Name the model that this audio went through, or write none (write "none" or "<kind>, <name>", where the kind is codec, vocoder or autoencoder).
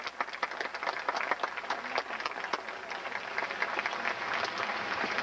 none